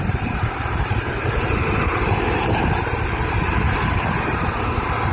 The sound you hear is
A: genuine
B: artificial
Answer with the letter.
B